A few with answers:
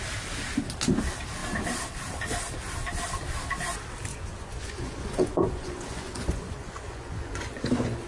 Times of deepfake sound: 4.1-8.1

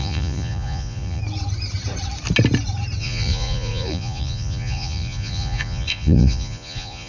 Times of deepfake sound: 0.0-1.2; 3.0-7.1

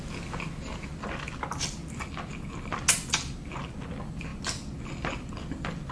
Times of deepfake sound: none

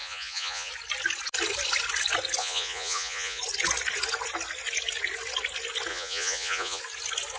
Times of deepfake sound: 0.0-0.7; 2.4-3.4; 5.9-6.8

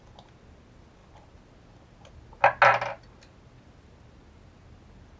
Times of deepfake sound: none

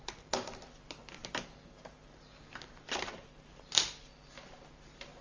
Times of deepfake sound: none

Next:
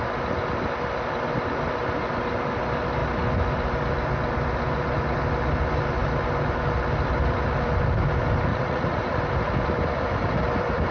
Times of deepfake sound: 8.5-9.2

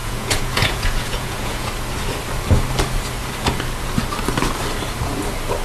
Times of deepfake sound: 0.0-1.7